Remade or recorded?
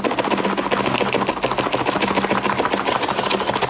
recorded